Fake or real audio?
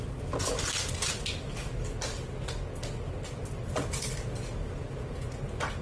real